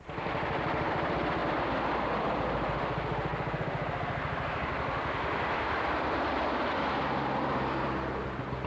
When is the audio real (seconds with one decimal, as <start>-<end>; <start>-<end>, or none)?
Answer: 1.4-2.0; 3.3-6.1